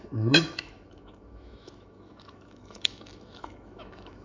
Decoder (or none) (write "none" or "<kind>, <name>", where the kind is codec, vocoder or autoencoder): autoencoder, DAC-VAE